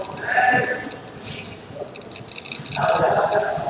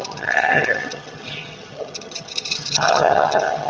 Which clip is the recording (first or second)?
first